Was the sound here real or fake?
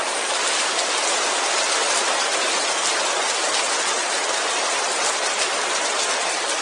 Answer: real